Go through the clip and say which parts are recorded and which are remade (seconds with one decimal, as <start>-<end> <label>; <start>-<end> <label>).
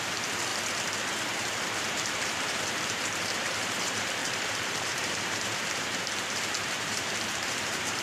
0.0-0.5 remade; 0.5-1.2 recorded; 1.2-8.0 remade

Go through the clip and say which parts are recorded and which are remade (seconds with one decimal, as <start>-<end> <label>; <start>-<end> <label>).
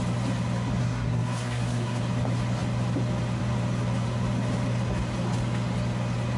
0.0-0.8 recorded; 0.8-2.0 remade; 2.0-6.4 recorded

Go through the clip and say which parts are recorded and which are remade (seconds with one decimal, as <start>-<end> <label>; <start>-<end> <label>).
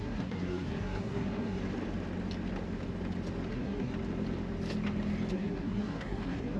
0.0-1.6 remade; 1.6-3.5 recorded; 3.5-3.9 remade; 3.9-5.3 recorded; 5.3-6.6 remade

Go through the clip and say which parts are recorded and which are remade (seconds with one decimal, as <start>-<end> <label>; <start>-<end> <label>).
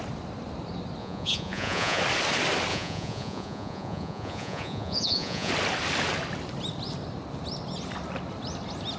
0.0-1.0 recorded; 1.0-2.0 remade; 2.0-2.7 recorded; 2.7-5.5 remade; 5.5-9.0 recorded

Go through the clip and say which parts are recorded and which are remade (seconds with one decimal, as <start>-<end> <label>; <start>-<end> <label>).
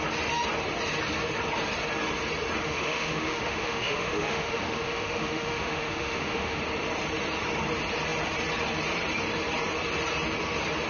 0.0-2.6 recorded; 2.6-6.6 remade; 6.6-10.9 recorded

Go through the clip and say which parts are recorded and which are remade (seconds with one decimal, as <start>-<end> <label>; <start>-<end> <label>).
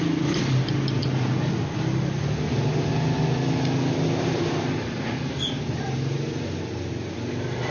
0.0-7.7 recorded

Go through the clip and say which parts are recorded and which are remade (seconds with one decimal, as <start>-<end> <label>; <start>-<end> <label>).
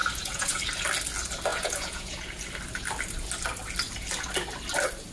0.0-0.6 remade; 0.6-1.5 recorded; 1.5-2.4 remade; 2.4-5.1 recorded